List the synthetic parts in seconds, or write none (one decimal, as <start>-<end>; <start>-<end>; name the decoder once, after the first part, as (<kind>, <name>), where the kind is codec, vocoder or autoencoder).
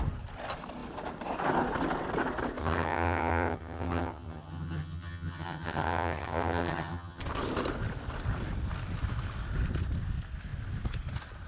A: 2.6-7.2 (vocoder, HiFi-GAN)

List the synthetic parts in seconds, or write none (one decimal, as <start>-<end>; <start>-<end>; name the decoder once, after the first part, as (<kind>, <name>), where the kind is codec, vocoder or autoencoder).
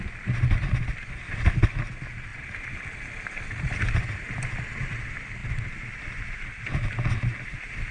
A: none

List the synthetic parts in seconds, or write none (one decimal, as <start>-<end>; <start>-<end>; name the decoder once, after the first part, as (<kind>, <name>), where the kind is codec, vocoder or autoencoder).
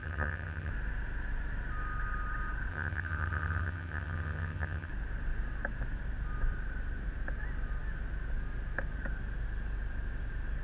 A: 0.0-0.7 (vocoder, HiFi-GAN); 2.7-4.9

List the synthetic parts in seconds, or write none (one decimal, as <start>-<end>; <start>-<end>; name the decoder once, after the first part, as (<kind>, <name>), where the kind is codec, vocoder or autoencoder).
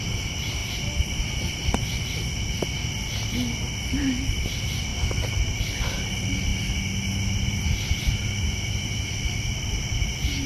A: none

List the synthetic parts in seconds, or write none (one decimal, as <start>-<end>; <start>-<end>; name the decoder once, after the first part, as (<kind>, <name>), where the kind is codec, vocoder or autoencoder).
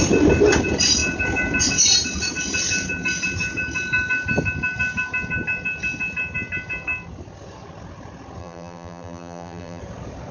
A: 8.4-9.8 (vocoder, BigVGAN v2)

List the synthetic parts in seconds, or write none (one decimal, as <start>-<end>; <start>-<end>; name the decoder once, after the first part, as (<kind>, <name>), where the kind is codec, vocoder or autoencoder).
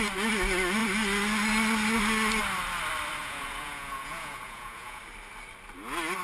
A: 3.2-5.0 (vocoder, Vocos)